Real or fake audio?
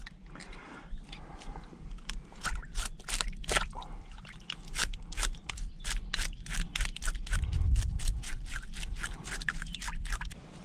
fake